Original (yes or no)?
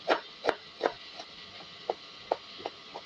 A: yes